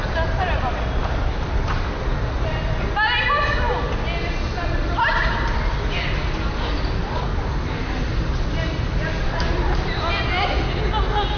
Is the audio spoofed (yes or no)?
no